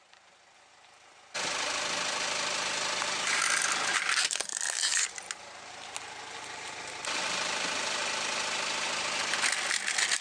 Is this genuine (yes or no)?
yes